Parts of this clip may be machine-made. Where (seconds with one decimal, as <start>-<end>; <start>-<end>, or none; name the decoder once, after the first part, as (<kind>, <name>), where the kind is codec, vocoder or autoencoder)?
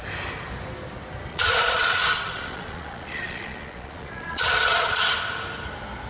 1.3-5.0 (vocoder, Vocos)